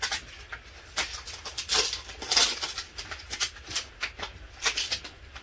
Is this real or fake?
real